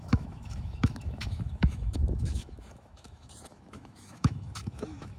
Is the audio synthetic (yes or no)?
yes